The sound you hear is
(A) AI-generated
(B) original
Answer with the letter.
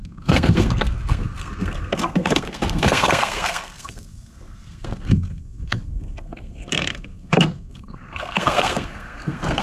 A